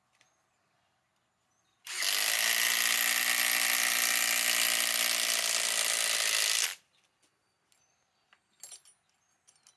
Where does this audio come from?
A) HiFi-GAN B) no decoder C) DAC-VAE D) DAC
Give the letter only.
B